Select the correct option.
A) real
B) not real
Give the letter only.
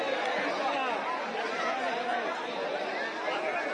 A